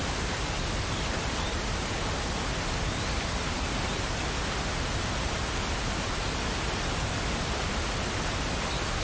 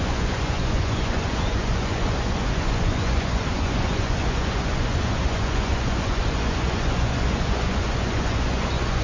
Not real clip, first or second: second